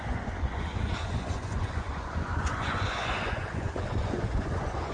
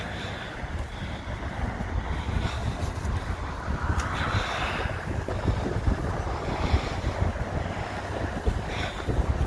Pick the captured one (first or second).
second